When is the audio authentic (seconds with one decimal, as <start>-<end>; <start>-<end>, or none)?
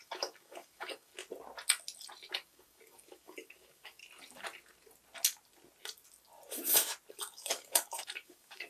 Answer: 1.1-2.3; 4.0-7.1